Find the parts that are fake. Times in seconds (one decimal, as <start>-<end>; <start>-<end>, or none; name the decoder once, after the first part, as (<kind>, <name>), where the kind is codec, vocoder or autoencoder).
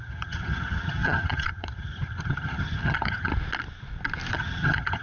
0.0-3.3 (vocoder, HiFi-GAN); 4.3-5.0